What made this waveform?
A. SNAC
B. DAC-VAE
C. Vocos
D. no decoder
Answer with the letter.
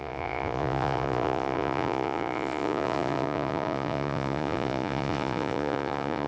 C